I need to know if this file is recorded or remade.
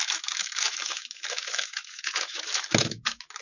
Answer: remade